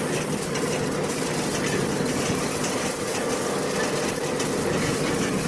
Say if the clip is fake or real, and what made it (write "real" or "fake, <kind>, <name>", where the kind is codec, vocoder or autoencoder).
real